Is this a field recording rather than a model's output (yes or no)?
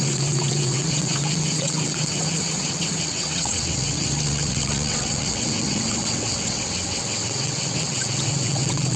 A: no